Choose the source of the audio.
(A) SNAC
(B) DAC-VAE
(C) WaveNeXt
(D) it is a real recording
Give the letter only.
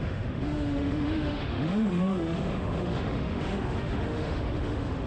B